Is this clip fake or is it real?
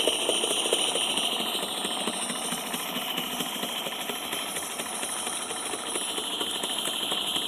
real